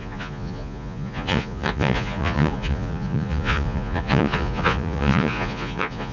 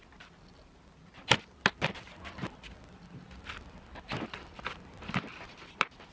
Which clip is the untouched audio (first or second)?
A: second